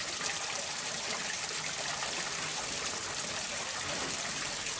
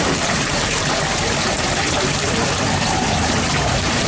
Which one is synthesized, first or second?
second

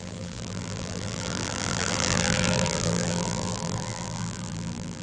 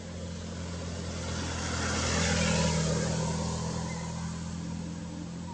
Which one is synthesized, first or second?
first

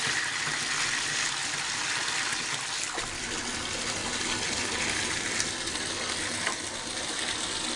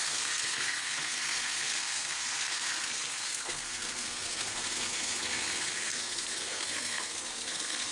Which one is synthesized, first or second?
second